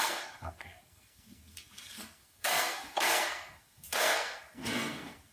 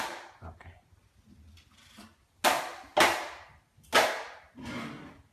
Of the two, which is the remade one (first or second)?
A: first